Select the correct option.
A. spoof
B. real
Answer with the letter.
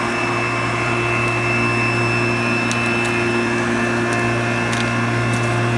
B